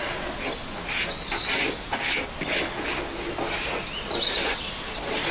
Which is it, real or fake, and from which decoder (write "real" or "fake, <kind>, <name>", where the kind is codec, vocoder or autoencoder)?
real